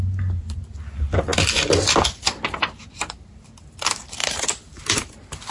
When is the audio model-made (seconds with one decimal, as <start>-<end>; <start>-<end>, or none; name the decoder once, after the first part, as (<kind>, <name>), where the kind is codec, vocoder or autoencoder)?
4.2-4.8 (vocoder, BigVGAN v2)